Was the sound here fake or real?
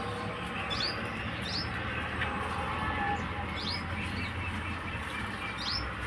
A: real